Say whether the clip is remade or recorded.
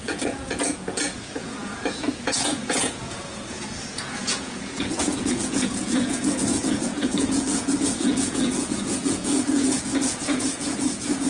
remade